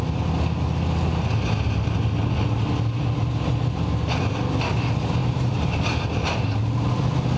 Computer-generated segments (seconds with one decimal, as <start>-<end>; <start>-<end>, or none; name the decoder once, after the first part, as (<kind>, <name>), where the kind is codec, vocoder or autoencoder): 5.2-6.4 (vocoder, BigVGAN v2)